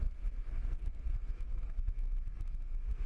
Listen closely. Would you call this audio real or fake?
fake